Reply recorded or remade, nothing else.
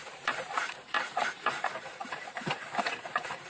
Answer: remade